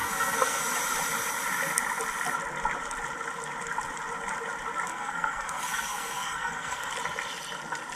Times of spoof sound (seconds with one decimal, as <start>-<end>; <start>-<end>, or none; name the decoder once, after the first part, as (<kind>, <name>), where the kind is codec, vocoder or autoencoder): 0.0-0.6 (codec, SNAC); 4.9-6.9